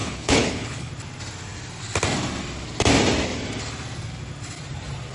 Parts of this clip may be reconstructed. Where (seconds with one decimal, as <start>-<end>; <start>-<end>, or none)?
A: 0.0-0.9